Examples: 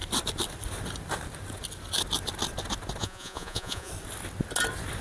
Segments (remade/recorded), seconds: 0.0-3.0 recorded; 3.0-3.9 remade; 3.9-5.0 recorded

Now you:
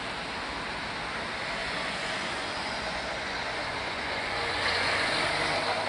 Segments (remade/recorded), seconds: 0.0-1.6 recorded; 1.6-5.1 remade; 5.1-5.9 recorded